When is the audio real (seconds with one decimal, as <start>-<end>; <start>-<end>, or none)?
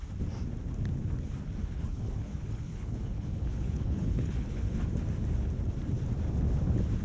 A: 0.0-1.6; 4.8-7.0